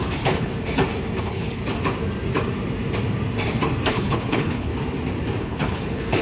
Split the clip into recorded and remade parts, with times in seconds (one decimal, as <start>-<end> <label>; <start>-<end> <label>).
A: 0.0-0.5 remade; 0.5-1.2 recorded; 1.2-1.6 remade; 1.6-3.9 recorded; 3.9-4.7 remade; 4.7-5.4 recorded; 5.4-6.2 remade